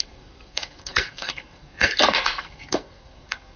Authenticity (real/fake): fake